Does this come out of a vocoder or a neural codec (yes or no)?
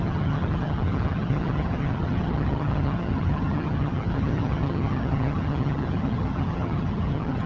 yes